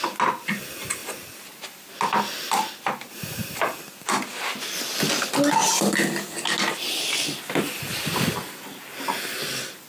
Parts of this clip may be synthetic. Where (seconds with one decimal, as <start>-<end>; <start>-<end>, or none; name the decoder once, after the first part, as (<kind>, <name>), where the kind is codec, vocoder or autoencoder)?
none